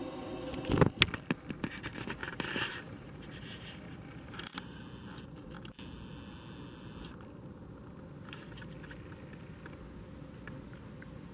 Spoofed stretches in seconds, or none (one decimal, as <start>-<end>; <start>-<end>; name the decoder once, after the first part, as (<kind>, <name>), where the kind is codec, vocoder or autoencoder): 2.2-4.8 (vocoder, BigVGAN v2)

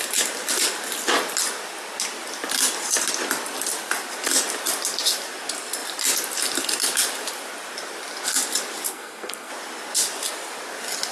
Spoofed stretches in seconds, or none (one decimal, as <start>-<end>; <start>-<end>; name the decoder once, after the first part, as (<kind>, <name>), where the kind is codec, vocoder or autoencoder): 8.9-9.5 (codec, SNAC)

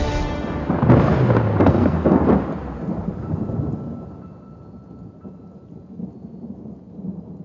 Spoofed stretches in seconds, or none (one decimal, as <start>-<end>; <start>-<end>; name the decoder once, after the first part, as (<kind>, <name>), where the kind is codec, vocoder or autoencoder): 1.6-2.2 (codec, SNAC)

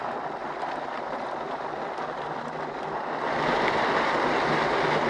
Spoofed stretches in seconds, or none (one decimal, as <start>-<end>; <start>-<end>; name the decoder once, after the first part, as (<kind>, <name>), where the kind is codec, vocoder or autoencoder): none

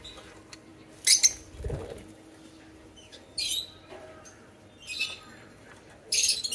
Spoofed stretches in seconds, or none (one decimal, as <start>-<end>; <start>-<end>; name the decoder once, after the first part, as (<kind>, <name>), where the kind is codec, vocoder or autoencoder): none

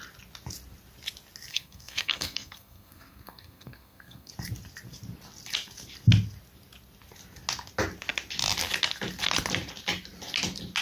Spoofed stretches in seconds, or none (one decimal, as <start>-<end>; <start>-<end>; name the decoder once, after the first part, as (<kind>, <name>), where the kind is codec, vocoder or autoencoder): 1.5-4.3 (codec, SNAC)